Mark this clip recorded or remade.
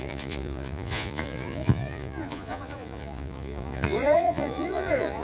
remade